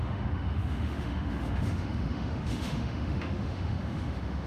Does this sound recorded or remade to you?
remade